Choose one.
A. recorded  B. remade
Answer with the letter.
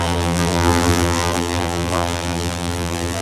B